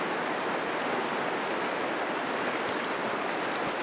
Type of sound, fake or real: real